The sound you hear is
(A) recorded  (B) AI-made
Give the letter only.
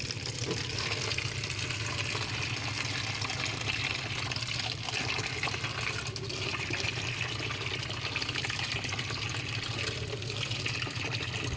A